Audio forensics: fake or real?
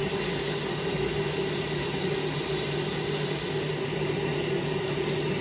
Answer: real